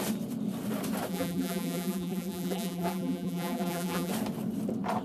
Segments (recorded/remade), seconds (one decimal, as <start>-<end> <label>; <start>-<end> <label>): 0.0-1.1 recorded; 1.1-4.1 remade; 4.1-5.0 recorded